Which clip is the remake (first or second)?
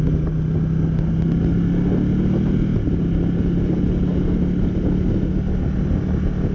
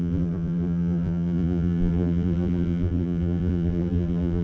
second